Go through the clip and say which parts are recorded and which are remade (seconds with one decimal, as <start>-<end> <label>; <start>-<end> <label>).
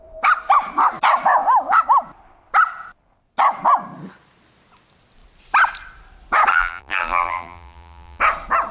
0.0-6.5 recorded; 6.5-8.2 remade; 8.2-8.7 recorded